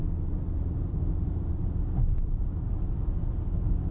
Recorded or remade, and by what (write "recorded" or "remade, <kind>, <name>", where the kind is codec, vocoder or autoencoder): recorded